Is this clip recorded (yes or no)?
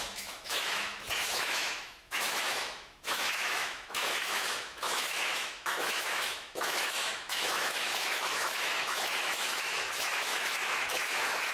no